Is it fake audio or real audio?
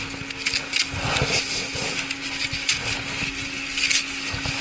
real